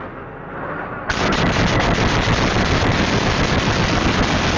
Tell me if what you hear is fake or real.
real